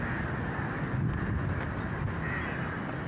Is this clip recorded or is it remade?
recorded